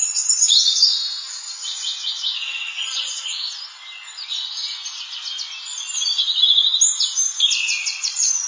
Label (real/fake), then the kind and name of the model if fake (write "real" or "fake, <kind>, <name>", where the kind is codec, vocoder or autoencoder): real